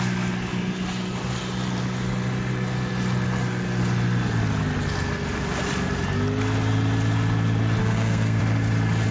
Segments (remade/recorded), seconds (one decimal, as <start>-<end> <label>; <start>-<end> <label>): 0.0-7.8 recorded; 7.8-8.4 remade; 8.4-9.1 recorded